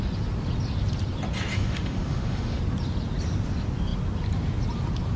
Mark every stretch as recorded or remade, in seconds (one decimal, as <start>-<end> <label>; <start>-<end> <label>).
0.0-1.5 recorded; 1.5-2.6 remade; 2.6-5.2 recorded